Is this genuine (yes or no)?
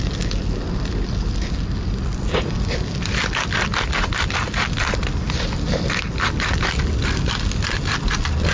yes